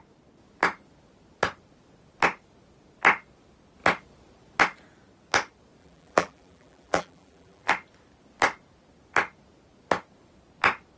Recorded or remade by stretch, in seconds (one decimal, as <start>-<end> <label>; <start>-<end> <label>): 0.0-5.8 recorded; 5.8-7.7 remade; 7.7-11.0 recorded